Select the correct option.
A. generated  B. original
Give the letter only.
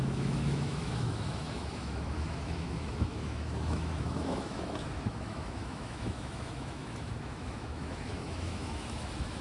A